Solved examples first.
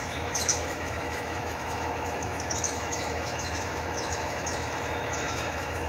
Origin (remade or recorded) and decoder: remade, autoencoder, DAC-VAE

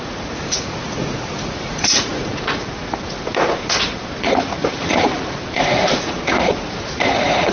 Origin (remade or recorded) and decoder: remade, vocoder, Vocos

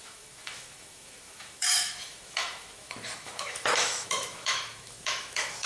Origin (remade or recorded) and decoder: remade, autoencoder, DAC-VAE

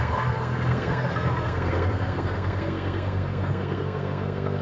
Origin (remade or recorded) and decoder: remade, codec, SNAC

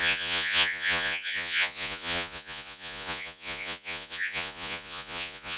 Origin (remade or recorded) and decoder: remade, vocoder, Vocos